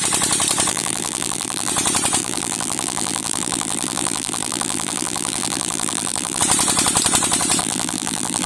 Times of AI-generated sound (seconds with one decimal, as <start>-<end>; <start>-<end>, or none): 0.7-1.7; 2.2-6.4; 7.6-8.5